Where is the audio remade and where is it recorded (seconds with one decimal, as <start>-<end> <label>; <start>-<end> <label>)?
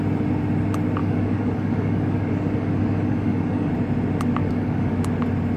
0.0-1.0 recorded; 1.0-3.7 remade; 3.7-4.4 recorded; 4.4-5.0 remade; 5.0-5.6 recorded